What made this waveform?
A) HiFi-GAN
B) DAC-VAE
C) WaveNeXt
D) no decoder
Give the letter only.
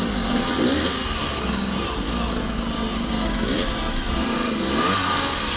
D